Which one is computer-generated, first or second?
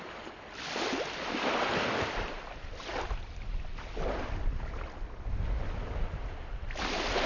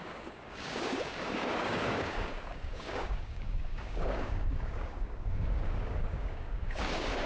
second